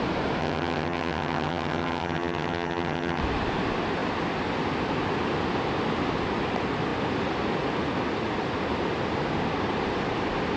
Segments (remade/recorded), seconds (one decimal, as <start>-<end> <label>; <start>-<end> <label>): 0.0-0.4 recorded; 0.4-3.2 remade; 3.2-10.6 recorded